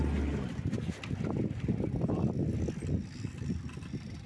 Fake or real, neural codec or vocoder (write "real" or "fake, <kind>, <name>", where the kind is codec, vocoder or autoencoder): real